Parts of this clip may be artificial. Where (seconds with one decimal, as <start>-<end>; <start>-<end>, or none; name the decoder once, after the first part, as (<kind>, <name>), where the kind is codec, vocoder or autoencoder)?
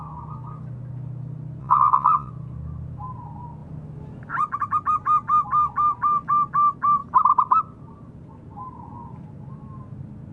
1.6-2.3 (vocoder, WaveNeXt)